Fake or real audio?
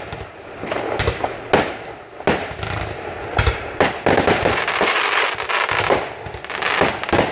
real